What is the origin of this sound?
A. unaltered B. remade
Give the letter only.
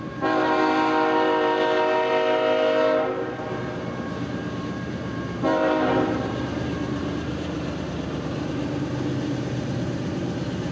B